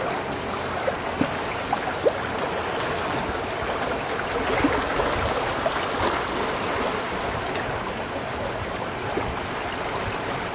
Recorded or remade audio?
recorded